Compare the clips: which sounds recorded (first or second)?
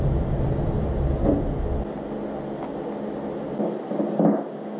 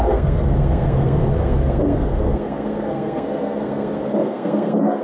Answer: first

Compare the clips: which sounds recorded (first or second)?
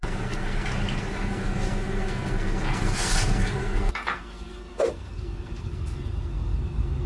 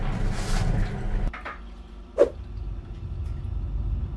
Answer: second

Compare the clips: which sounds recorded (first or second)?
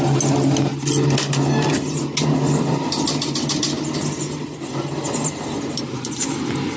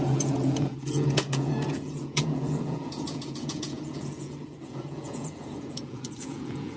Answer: first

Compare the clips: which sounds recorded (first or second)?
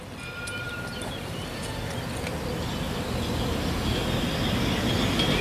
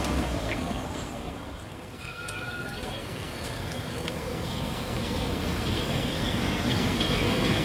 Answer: first